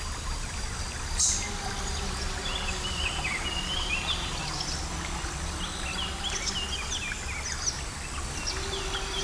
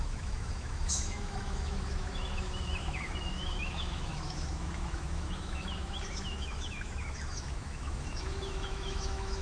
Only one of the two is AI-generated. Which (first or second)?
second